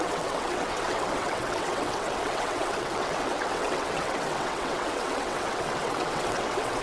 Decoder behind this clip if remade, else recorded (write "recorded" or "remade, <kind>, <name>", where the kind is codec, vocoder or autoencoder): remade, vocoder, WaveNeXt